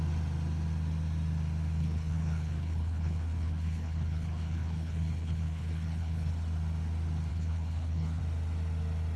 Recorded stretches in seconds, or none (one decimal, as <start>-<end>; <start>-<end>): 0.0-1.8; 6.3-7.3; 8.2-9.2